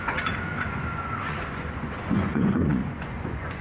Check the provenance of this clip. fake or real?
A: fake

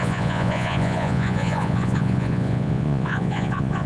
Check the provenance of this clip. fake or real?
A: fake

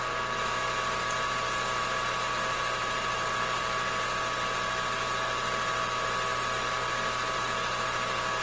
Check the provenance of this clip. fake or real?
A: real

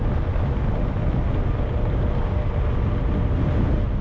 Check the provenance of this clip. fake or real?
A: real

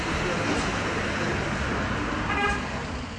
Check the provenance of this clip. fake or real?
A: real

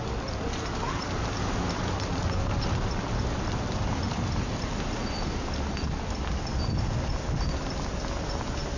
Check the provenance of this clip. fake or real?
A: real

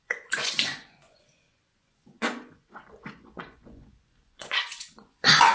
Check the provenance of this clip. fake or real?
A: fake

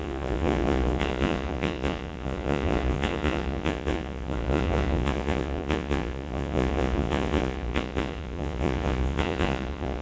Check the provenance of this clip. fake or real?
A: fake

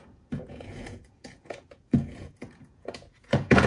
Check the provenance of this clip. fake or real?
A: fake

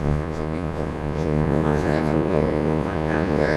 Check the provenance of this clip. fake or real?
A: fake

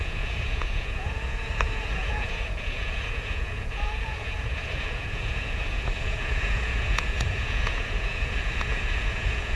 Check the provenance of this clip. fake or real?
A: fake